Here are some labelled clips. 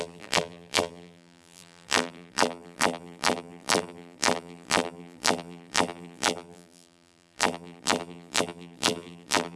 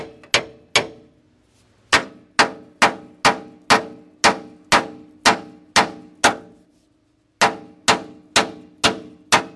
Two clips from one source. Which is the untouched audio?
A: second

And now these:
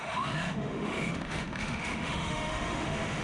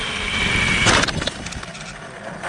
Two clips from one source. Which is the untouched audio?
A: second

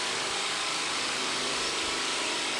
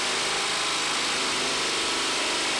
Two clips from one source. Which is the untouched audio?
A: second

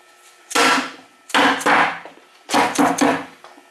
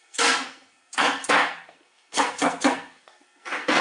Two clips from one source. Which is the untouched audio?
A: first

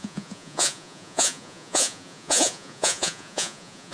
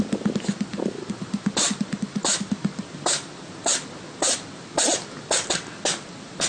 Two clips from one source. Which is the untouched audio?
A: second